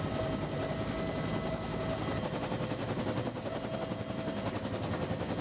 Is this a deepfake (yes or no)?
no